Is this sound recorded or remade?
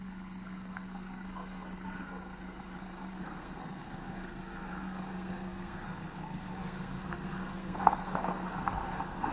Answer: remade